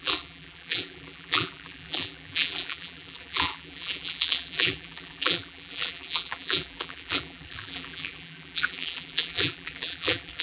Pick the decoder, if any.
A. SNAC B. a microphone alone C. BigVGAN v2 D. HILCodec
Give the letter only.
C